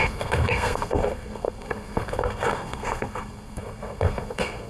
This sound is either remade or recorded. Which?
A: remade